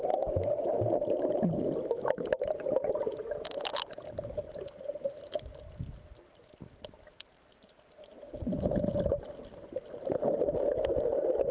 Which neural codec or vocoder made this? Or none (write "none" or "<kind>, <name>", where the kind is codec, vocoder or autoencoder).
none